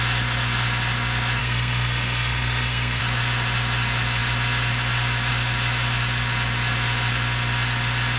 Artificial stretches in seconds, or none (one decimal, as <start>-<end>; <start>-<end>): 1.4-3.0

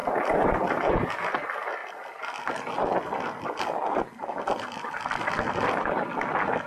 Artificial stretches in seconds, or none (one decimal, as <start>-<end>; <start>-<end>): 0.0-1.1

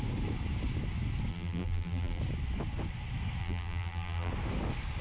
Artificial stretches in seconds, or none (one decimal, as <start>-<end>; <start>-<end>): 1.3-2.2; 3.4-4.3

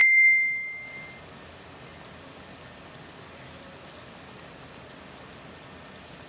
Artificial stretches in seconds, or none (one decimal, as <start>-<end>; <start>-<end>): none